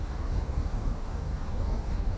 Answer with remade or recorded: remade